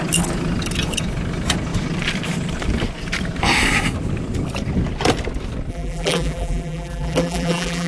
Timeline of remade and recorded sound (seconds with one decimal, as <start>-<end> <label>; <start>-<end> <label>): 0.0-5.7 recorded; 5.7-7.9 remade